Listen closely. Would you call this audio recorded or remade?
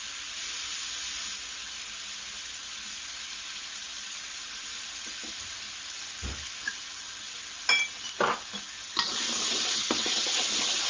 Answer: recorded